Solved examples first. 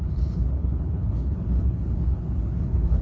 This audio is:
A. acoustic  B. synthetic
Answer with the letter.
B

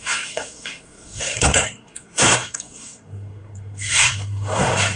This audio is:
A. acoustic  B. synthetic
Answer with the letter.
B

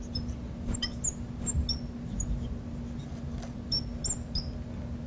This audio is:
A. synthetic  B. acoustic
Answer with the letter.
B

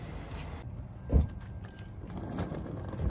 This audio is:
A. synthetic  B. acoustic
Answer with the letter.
B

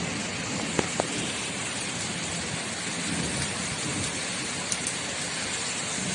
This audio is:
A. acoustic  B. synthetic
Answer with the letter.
A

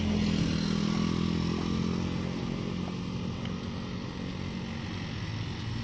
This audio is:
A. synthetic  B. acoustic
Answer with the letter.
B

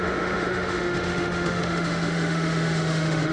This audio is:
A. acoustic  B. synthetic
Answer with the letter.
B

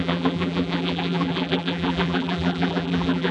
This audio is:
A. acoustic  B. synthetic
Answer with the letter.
B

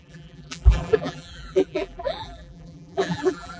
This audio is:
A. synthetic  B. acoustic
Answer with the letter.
A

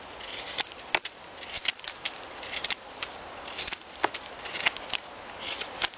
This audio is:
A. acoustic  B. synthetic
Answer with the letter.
A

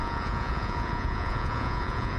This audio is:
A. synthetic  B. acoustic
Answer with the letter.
A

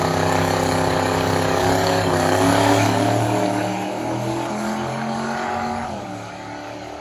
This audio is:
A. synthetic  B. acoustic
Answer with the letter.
A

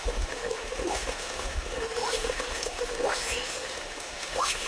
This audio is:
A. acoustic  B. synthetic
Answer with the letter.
B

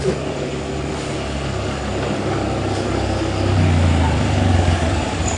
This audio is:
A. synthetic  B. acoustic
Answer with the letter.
A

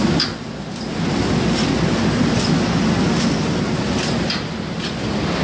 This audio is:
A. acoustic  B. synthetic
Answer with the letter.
A